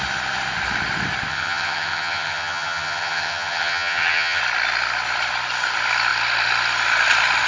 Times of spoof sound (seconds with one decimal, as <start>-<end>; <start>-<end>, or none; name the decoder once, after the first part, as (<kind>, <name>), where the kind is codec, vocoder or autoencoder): 1.3-4.4 (vocoder, HiFi-GAN)